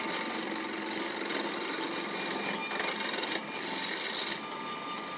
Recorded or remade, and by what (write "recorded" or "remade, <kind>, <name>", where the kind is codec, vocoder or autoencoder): recorded